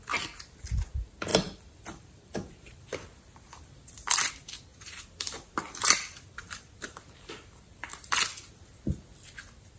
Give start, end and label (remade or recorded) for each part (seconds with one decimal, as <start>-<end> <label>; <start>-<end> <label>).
0.0-1.3 recorded; 1.3-4.3 remade; 4.3-4.7 recorded; 4.7-8.2 remade; 8.2-9.8 recorded